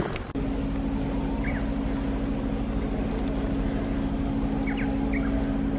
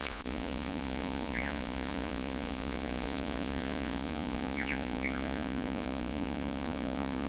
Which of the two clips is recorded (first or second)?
first